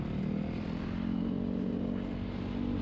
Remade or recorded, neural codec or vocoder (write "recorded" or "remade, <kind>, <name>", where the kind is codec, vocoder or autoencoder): recorded